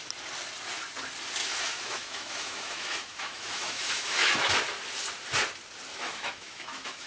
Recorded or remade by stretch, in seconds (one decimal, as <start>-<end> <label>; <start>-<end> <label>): 0.0-1.4 recorded; 1.4-4.5 remade; 4.5-5.9 recorded; 5.9-7.1 remade